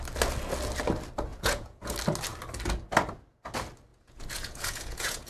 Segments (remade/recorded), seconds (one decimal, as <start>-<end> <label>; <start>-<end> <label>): 0.0-1.3 recorded; 1.3-1.9 remade; 1.9-3.9 recorded; 3.9-5.3 remade

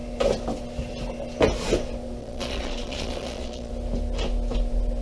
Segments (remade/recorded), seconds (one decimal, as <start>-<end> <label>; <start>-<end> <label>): 0.0-2.2 recorded; 2.2-3.7 remade; 3.7-5.0 recorded

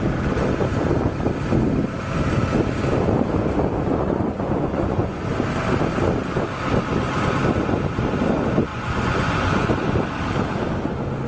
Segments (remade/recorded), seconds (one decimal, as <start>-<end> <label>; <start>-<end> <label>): 0.0-3.9 recorded; 3.9-5.3 remade; 5.3-8.7 recorded; 8.7-9.7 remade; 9.7-11.3 recorded

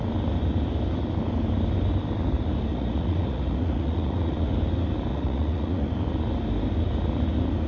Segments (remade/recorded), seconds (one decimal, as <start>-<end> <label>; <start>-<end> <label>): 0.0-2.7 recorded; 2.7-4.5 remade; 4.5-5.1 recorded; 5.1-5.9 remade; 5.9-7.7 recorded

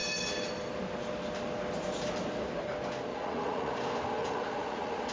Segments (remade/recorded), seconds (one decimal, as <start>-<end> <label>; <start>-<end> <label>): 0.0-3.1 recorded; 3.1-3.7 remade; 3.7-4.2 recorded; 4.2-5.1 remade

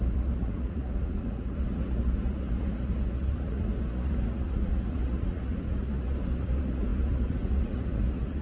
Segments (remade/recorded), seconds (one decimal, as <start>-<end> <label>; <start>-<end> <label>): 0.0-8.4 remade